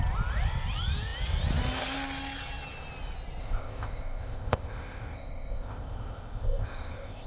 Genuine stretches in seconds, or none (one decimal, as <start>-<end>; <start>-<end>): 0.0-3.4